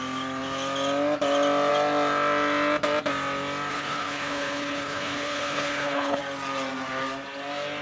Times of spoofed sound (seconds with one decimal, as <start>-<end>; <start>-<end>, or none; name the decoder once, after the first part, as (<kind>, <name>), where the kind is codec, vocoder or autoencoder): 3.7-6.2 (codec, HILCodec)